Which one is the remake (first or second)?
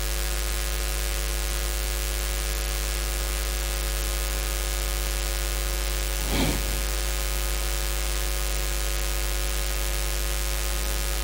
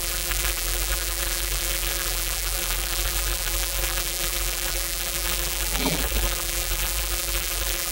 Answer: second